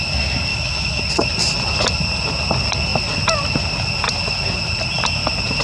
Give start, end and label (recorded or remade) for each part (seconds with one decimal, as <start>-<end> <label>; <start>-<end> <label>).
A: 0.0-0.5 recorded; 0.5-1.0 remade; 1.0-5.6 recorded